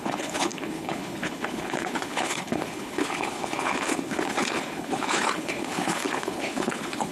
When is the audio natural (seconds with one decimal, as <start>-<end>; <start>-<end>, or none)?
none